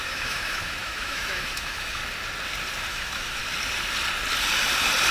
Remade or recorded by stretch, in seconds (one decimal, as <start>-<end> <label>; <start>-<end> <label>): 0.0-2.0 remade; 2.0-2.9 recorded; 2.9-3.4 remade; 3.4-5.1 recorded